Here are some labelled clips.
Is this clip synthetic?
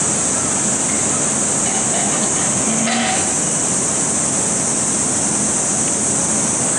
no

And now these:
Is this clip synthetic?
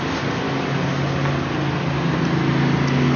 no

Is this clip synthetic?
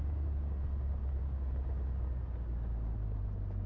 no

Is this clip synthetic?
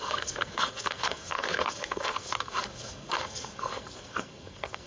yes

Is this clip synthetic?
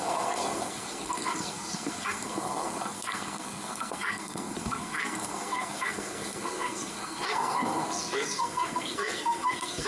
yes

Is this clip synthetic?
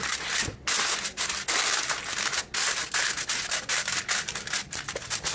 no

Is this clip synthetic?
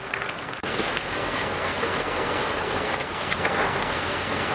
yes